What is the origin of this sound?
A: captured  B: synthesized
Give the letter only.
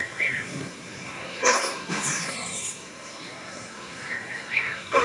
B